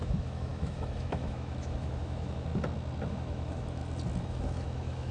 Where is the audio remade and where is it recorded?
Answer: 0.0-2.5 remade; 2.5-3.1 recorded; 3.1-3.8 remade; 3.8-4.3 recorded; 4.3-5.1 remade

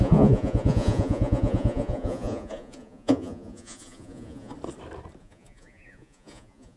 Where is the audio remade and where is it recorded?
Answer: 0.0-4.5 remade; 4.5-5.2 recorded; 5.2-6.8 remade

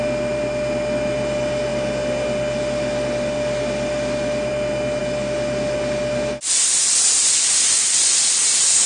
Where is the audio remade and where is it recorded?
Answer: 0.0-8.9 recorded

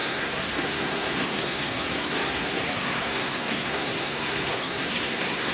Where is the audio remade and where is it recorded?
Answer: 0.0-5.5 remade

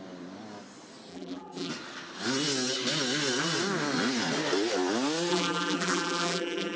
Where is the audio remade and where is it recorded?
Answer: 0.0-1.1 recorded; 1.1-1.7 remade; 1.7-5.3 recorded; 5.3-6.8 remade